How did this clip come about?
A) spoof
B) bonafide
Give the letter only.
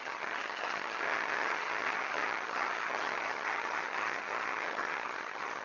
A